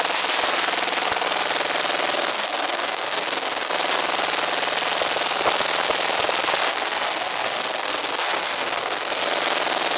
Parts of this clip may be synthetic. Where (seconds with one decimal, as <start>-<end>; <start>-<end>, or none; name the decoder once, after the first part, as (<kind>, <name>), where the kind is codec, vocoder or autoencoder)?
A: 2.3-3.7 (codec, SNAC); 6.7-9.2